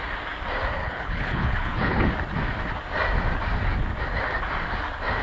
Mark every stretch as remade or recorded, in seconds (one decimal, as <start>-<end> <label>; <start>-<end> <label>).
0.0-0.8 recorded; 0.8-2.1 remade; 2.1-5.2 recorded